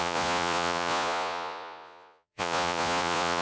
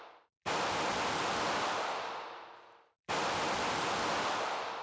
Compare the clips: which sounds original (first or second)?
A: second